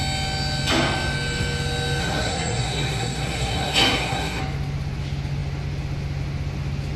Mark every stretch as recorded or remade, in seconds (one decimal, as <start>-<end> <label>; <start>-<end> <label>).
0.0-2.0 recorded; 2.0-4.4 remade; 4.4-7.0 recorded